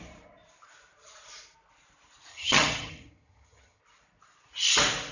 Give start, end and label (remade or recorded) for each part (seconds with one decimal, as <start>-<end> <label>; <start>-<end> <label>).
0.0-2.3 recorded; 2.3-3.8 remade; 3.8-5.1 recorded